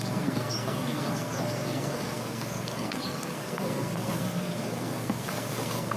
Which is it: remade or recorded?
remade